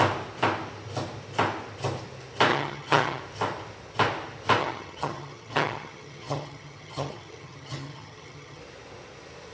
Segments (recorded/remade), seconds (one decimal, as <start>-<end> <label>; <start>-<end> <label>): 0.0-2.5 recorded; 2.5-3.2 remade; 3.2-4.6 recorded; 4.6-8.6 remade; 8.6-9.5 recorded